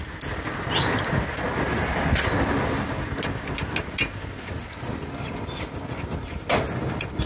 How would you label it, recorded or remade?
recorded